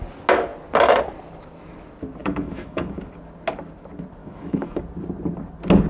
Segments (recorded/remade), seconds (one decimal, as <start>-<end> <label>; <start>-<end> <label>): 0.0-2.2 recorded; 2.2-3.0 remade; 3.0-4.2 recorded; 4.2-4.8 remade; 4.8-5.9 recorded